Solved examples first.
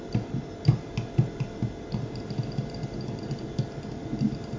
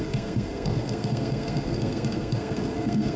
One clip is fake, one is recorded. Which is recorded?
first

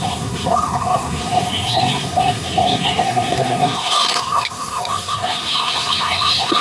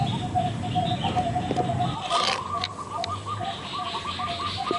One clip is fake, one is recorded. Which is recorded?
second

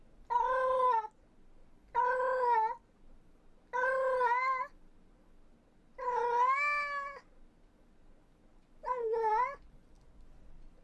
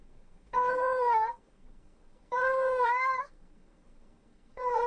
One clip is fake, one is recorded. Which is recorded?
first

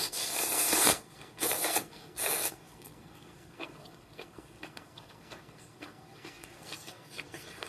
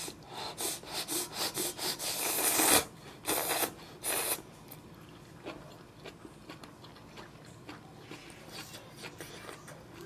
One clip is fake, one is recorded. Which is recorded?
second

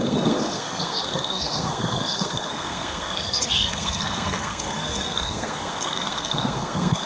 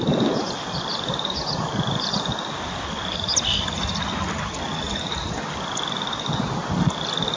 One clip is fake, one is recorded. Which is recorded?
second